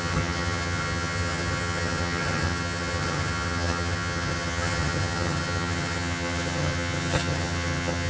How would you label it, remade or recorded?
remade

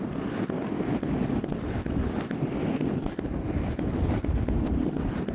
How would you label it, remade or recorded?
recorded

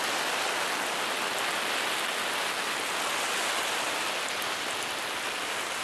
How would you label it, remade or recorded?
recorded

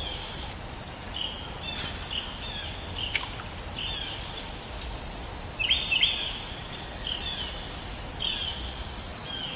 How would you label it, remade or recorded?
recorded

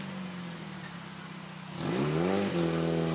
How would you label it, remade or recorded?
recorded